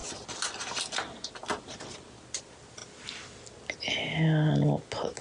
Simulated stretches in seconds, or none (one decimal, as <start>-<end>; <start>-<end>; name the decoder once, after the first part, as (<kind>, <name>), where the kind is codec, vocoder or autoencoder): none